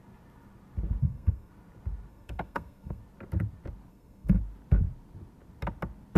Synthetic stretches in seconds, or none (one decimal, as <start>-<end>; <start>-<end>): 1.0-1.5; 2.1-3.0; 3.9-4.4